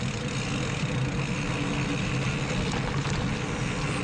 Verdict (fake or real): real